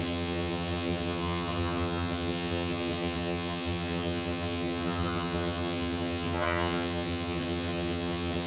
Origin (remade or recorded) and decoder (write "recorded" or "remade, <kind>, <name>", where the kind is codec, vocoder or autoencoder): remade, vocoder, HiFi-GAN